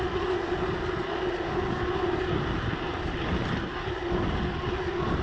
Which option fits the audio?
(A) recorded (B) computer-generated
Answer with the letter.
A